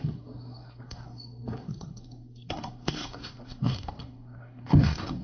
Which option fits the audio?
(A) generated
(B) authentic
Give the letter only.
A